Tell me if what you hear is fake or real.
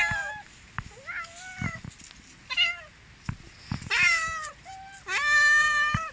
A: real